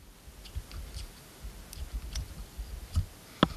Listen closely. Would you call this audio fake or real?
real